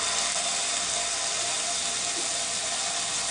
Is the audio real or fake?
real